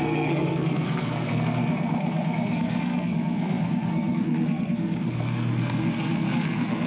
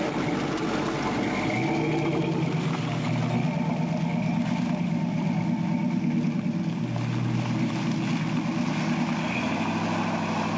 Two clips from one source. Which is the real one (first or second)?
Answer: second